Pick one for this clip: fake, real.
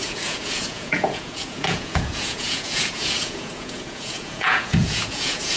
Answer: fake